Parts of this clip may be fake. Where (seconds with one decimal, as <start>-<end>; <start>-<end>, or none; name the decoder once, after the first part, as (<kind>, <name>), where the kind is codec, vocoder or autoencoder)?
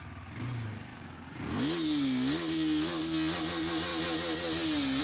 none